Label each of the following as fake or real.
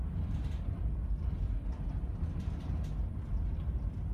real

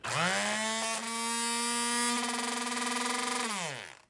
real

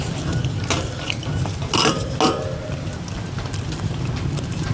real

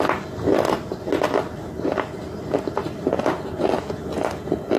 real